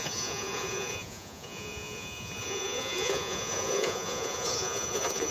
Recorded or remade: remade